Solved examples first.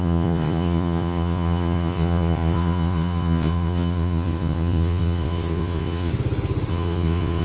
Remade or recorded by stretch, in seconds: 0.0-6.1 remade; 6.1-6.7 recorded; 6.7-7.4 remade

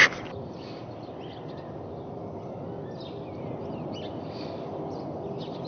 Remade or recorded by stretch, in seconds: 0.0-5.7 recorded

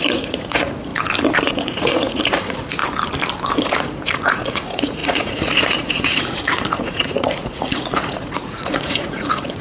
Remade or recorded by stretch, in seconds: 0.0-0.9 remade; 0.9-1.5 recorded; 1.5-2.8 remade; 2.8-3.7 recorded; 3.7-9.6 remade

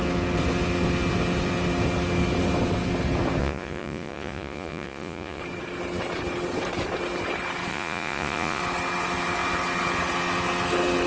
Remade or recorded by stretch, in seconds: 0.0-3.4 recorded; 3.4-5.4 remade; 5.4-7.7 recorded; 7.7-8.6 remade; 8.6-11.1 recorded